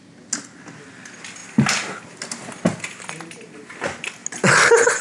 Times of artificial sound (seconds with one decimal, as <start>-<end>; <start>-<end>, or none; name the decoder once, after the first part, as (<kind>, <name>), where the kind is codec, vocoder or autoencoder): none

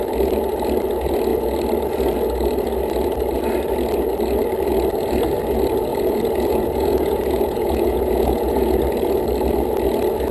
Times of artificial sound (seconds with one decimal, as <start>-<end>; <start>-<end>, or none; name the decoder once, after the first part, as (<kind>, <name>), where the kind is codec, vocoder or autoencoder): 5.9-8.8 (vocoder, Vocos)